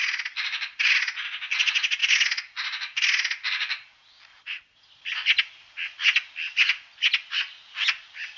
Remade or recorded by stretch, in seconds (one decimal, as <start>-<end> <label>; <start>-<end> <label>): 0.0-8.4 recorded